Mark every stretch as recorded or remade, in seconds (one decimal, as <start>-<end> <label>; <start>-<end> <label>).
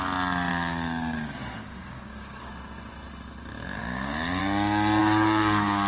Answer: 0.0-0.5 recorded; 0.5-2.5 remade; 2.5-3.8 recorded; 3.8-4.4 remade; 4.4-5.0 recorded; 5.0-5.9 remade